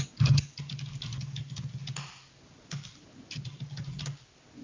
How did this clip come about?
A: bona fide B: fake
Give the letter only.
A